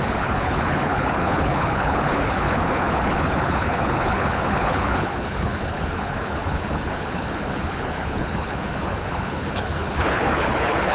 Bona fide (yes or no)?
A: no